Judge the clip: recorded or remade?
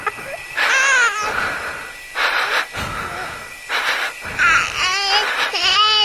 recorded